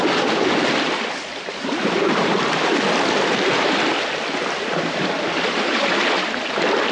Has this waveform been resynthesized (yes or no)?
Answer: yes